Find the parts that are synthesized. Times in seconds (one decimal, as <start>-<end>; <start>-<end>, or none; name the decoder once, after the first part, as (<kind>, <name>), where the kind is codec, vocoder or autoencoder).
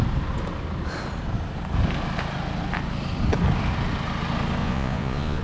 4.6-5.4 (vocoder, Vocos)